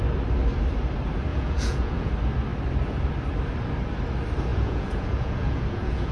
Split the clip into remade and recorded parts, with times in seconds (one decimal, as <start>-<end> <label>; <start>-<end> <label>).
0.0-1.3 recorded; 1.3-2.1 remade; 2.1-4.5 recorded; 4.5-6.1 remade